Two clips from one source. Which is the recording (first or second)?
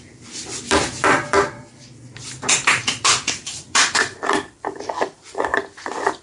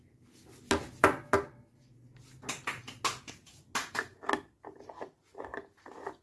second